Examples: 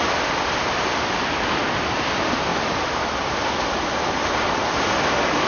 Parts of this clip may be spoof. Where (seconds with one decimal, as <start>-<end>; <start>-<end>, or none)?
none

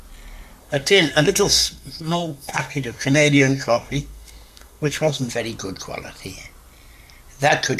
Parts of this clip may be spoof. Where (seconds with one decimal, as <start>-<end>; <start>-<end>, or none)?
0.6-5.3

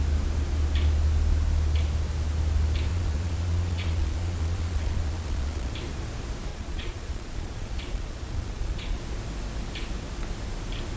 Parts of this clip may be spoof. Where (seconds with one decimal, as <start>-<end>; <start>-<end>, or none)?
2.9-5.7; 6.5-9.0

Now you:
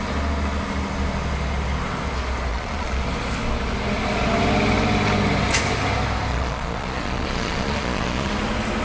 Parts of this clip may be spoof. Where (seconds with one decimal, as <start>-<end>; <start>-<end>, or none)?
2.5-3.0; 6.3-8.3